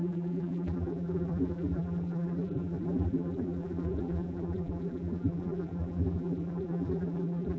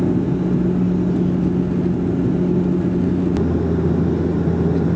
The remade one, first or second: first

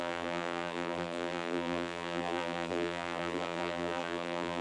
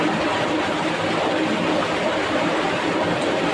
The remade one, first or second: first